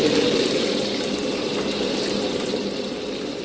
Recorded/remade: recorded